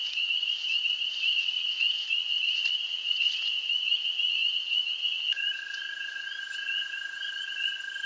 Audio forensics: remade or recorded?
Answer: remade